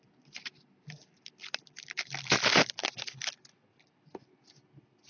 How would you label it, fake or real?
real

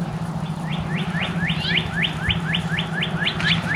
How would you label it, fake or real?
fake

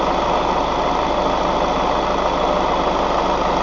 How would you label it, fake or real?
real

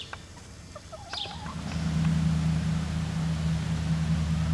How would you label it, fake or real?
real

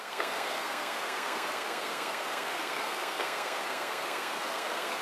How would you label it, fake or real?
fake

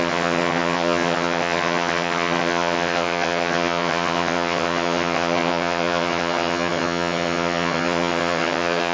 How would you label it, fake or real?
fake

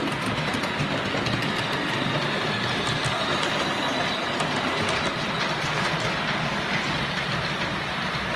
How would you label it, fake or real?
real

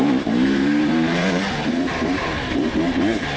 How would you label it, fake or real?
fake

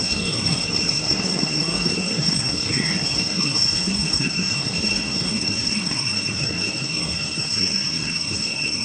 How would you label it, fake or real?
fake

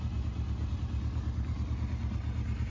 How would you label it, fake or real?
real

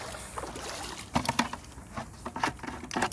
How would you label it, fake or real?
real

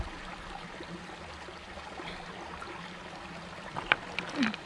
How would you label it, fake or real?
real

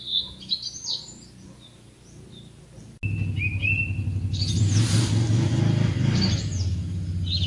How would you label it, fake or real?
real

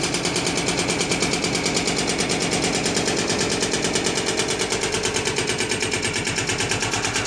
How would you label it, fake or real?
real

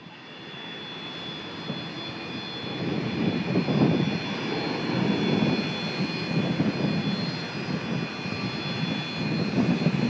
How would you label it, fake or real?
real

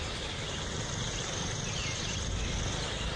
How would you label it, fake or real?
real